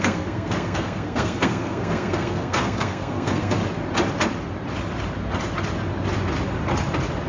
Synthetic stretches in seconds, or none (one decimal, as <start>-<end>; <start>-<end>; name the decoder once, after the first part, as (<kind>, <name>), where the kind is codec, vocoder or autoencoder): 0.0-3.6 (codec, SNAC)